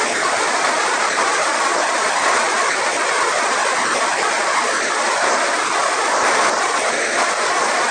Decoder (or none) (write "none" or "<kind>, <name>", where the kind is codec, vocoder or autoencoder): vocoder, BigVGAN v2